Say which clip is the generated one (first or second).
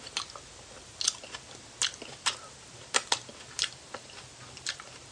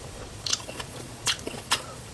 second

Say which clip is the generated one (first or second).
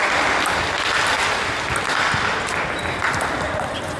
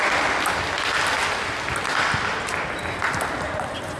first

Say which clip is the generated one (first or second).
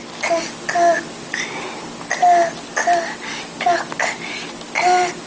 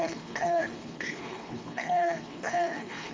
second